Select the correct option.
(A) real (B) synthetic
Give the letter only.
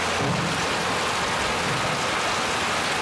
A